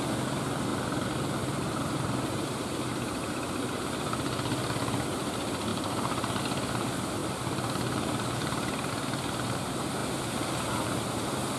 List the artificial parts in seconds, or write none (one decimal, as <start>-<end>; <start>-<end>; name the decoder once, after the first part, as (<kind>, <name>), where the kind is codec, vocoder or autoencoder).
0.7-3.2 (vocoder, BigVGAN v2); 5.7-6.4; 7.2-8.9